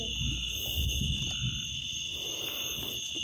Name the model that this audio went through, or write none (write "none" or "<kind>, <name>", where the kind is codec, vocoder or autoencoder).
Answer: none